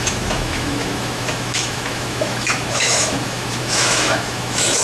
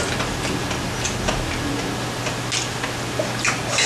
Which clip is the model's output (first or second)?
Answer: first